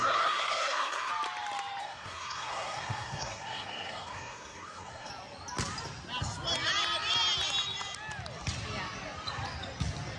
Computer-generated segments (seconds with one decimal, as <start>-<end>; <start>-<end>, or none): 0.0-1.1; 1.8-5.1